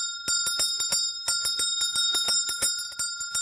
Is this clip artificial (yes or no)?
no